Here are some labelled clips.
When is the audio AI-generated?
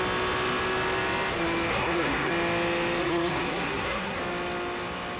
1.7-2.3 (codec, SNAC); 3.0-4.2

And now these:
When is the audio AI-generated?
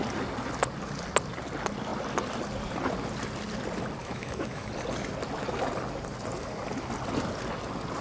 4.0-4.7 (autoencoder, DAC-VAE)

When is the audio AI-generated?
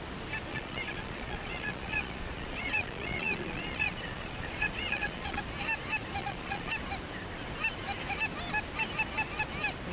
0.5-5.4 (vocoder, Vocos); 6.2-6.7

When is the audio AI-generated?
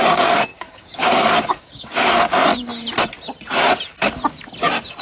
0.5-2.1 (codec, DAC)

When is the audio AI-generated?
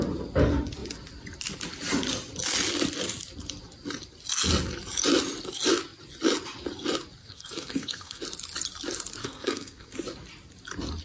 7.2-8.2 (codec, SNAC); 9.2-9.9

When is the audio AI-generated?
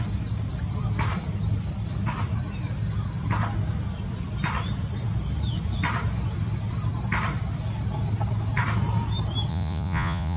9.5-10.4 (vocoder, Vocos)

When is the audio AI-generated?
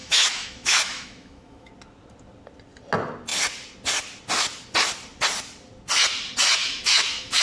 0.0-1.7 (autoencoder, DAC-VAE); 6.6-7.4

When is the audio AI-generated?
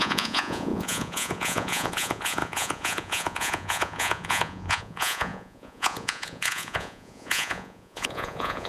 0.0-8.7 (vocoder, Vocos)